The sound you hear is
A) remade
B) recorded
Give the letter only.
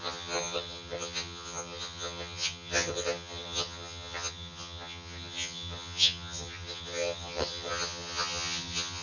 A